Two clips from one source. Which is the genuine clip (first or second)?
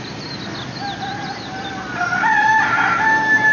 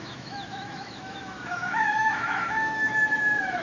first